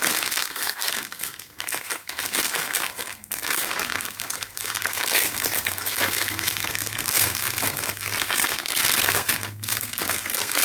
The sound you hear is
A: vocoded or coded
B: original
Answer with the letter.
A